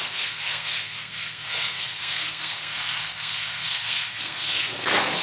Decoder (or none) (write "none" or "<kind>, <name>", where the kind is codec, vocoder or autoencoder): codec, SNAC